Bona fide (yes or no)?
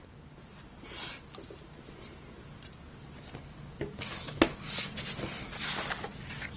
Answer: yes